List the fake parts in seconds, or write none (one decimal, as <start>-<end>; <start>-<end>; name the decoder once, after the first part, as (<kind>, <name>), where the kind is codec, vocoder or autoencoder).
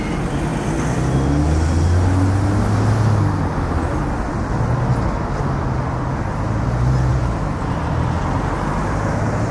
none